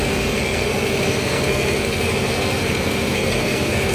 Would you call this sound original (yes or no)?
no